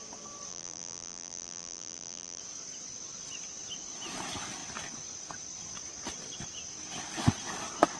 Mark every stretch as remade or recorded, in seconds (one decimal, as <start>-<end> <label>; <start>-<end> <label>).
0.0-0.5 recorded; 0.5-2.4 remade; 2.4-8.0 recorded